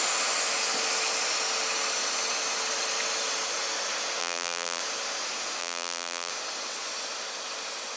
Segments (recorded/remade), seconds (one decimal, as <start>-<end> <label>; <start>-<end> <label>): 0.0-4.2 recorded; 4.2-4.8 remade; 4.8-5.6 recorded; 5.6-6.3 remade; 6.3-8.0 recorded